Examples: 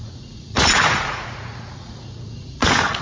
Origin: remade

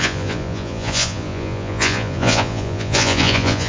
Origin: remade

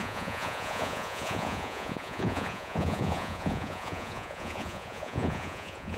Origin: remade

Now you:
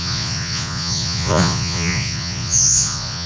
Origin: remade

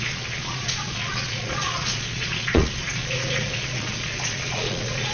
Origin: remade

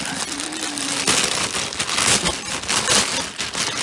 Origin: recorded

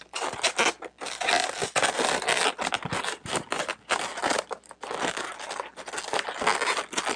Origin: recorded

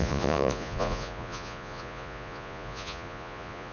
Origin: remade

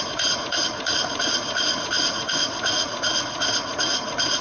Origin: remade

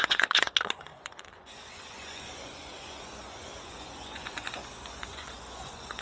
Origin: remade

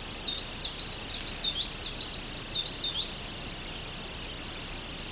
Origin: recorded